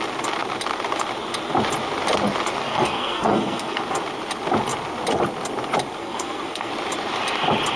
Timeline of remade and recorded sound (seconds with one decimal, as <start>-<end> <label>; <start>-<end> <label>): 0.0-2.7 recorded; 2.7-3.8 remade; 3.8-6.0 recorded; 6.0-6.7 remade; 6.7-7.8 recorded